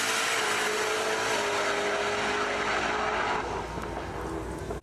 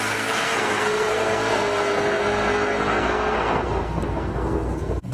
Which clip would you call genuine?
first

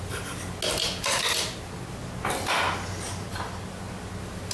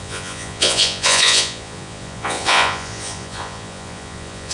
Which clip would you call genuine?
first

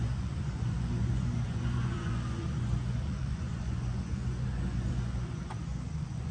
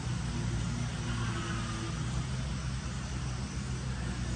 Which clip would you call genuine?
second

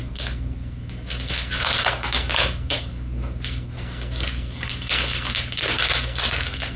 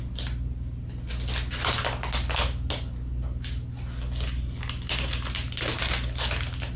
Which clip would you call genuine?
second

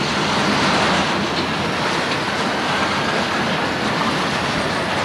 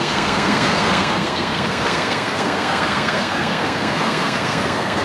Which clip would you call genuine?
first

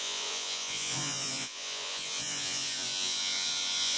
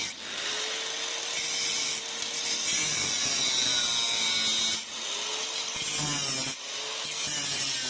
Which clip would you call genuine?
second